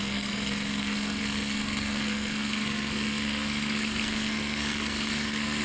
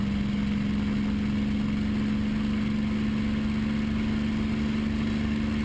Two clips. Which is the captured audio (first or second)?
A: second